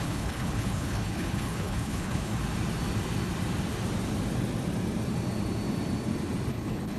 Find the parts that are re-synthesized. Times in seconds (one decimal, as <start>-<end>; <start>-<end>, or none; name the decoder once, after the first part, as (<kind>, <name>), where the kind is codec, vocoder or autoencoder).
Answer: 0.0-2.3 (codec, HILCodec); 6.5-7.0